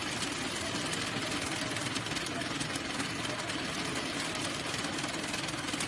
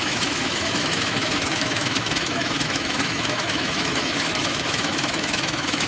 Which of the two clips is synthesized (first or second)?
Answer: second